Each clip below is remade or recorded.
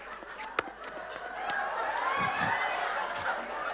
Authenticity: recorded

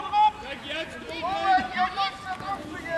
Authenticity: recorded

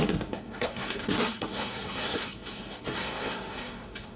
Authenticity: remade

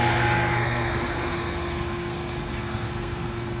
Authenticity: remade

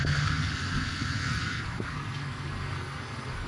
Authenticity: remade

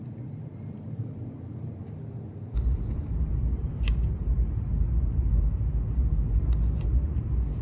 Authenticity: recorded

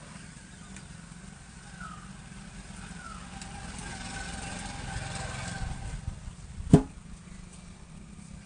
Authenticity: recorded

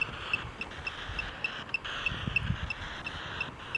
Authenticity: recorded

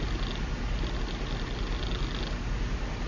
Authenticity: recorded